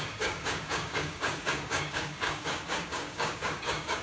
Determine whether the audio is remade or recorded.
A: remade